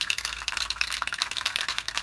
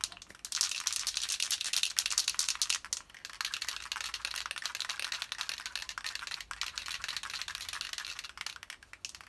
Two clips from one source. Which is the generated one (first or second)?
first